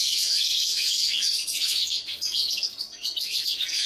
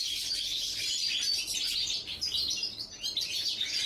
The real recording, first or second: second